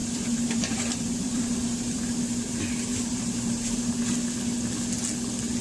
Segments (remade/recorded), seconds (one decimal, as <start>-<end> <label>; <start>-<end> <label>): 0.0-2.0 remade; 2.0-2.9 recorded; 2.9-3.9 remade; 3.9-5.6 recorded